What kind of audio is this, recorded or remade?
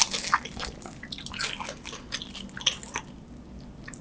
recorded